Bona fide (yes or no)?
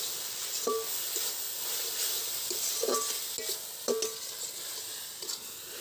yes